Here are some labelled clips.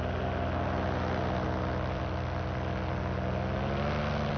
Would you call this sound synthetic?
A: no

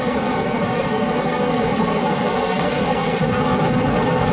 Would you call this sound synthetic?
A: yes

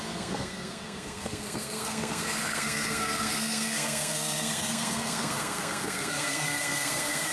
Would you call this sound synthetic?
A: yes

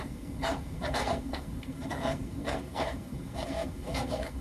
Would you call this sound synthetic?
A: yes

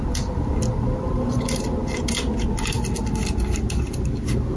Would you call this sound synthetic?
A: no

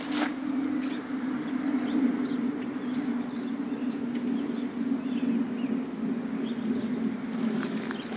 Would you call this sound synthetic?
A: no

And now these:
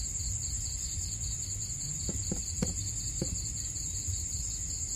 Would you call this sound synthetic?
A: no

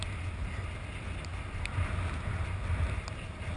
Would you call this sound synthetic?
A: no